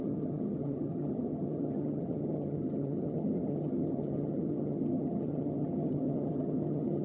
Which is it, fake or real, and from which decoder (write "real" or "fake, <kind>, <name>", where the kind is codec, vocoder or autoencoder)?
fake, vocoder, HiFi-GAN